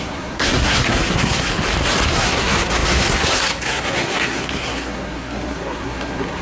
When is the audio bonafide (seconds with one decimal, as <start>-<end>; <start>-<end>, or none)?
1.5-2.1